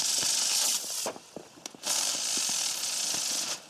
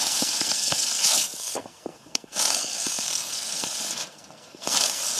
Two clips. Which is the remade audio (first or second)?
second